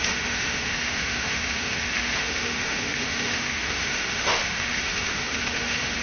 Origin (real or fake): fake